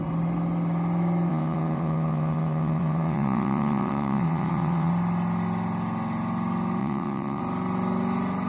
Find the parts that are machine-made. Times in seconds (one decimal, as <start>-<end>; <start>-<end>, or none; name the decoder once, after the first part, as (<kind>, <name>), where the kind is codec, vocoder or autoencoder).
1.3-4.9 (vocoder, WaveNeXt); 6.8-7.4